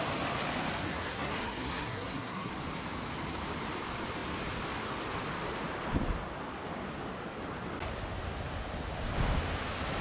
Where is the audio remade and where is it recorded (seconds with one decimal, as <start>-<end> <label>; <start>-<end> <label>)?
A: 0.0-0.8 recorded; 0.8-2.5 remade; 2.5-10.0 recorded